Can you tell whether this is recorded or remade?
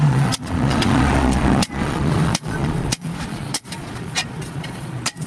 remade